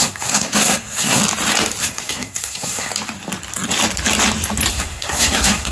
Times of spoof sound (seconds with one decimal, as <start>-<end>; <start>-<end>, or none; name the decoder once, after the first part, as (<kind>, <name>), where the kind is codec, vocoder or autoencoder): 0.0-1.2 (codec, SNAC); 1.8-2.9; 4.7-5.7

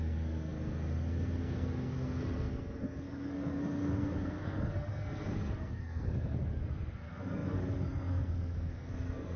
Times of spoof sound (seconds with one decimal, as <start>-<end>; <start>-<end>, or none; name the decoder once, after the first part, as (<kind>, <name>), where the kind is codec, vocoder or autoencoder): 0.0-9.4 (codec, SNAC)